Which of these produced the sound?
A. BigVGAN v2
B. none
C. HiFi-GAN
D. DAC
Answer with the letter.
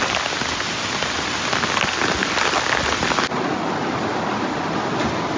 B